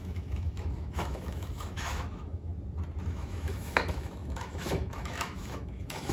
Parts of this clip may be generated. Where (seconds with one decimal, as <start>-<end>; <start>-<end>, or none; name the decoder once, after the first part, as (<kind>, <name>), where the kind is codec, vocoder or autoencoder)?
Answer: 0.0-2.5 (autoencoder, DAC-VAE); 3.1-6.1